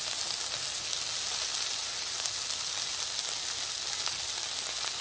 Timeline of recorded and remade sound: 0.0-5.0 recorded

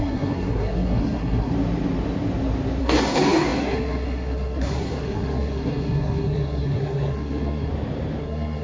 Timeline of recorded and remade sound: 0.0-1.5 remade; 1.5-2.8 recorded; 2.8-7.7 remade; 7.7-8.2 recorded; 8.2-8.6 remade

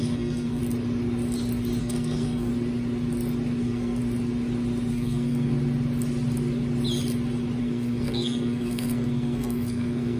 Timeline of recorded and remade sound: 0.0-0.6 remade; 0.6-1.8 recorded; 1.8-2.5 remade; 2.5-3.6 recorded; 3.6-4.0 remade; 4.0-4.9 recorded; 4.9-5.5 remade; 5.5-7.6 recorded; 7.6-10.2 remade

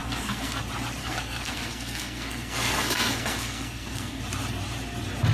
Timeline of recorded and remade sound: 0.0-0.6 remade; 0.6-1.0 recorded; 1.0-4.2 remade; 4.2-5.3 recorded

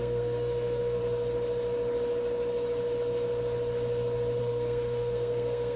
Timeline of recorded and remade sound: 0.0-1.0 remade; 1.0-4.4 recorded; 4.4-5.8 remade

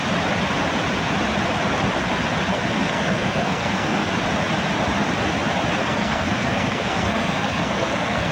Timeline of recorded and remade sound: 0.0-2.5 recorded; 2.5-4.1 remade; 4.1-5.8 recorded; 5.8-8.3 remade

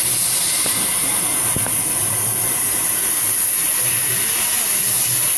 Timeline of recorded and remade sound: 0.0-5.4 recorded

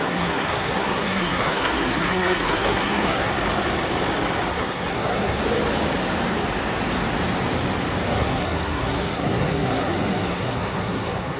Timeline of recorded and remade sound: 0.0-3.3 remade; 3.3-4.5 recorded; 4.5-5.4 remade; 5.4-8.1 recorded; 8.1-11.4 remade